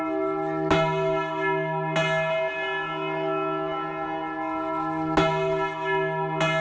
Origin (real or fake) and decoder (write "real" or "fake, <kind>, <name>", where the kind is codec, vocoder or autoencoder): real